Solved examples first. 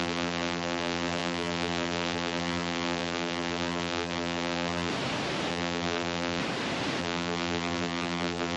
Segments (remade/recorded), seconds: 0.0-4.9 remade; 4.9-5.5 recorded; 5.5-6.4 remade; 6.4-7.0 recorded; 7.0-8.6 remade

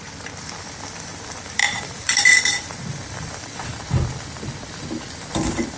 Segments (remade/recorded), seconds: 0.0-5.8 remade

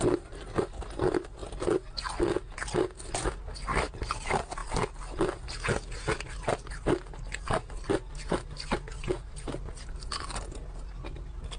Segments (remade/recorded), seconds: 0.0-11.6 recorded